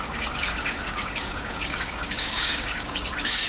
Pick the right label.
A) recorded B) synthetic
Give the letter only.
B